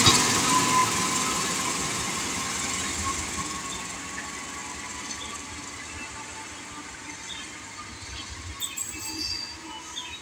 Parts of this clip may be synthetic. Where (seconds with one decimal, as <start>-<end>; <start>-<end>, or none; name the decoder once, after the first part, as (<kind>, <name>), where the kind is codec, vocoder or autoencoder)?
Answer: 4.6-5.5 (vocoder, BigVGAN v2); 7.0-7.8